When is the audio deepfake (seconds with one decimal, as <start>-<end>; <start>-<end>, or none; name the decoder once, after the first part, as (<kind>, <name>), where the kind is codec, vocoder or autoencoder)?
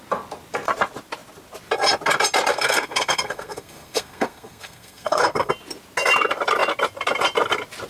2.5-5.5 (codec, SNAC)